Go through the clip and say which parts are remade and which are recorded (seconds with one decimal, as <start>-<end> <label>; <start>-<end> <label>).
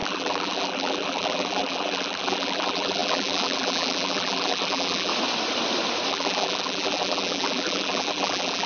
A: 0.0-5.1 remade; 5.1-6.1 recorded; 6.1-8.7 remade